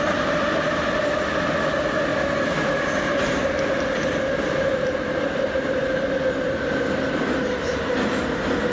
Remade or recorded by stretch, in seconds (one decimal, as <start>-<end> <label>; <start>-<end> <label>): 0.0-8.7 recorded